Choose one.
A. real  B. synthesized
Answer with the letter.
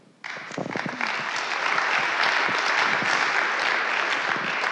A